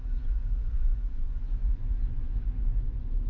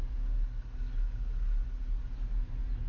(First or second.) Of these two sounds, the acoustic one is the second